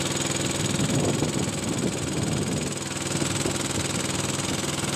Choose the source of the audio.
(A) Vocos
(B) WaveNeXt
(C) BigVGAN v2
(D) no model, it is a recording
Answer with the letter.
D